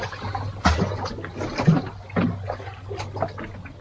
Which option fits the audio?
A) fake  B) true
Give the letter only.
B